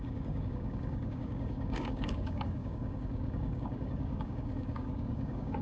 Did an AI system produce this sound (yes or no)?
yes